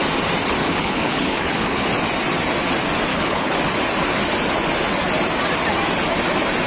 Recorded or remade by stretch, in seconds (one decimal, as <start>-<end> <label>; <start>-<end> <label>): 0.0-0.6 recorded; 0.6-1.8 remade; 1.8-3.1 recorded; 3.1-3.6 remade; 3.6-6.7 recorded